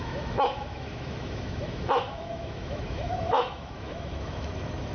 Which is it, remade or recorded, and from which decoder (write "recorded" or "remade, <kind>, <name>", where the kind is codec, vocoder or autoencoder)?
remade, autoencoder, DAC-VAE